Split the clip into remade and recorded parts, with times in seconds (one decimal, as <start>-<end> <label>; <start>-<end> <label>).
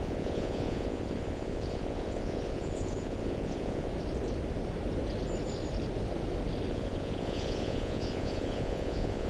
0.0-3.9 remade; 3.9-6.7 recorded; 6.7-9.3 remade